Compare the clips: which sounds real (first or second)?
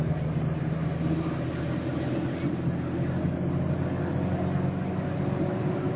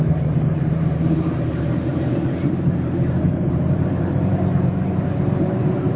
first